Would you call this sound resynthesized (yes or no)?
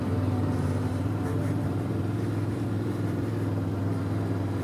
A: yes